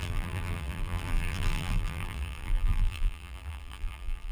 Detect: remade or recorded remade